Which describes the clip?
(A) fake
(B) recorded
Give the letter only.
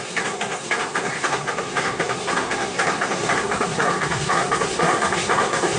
A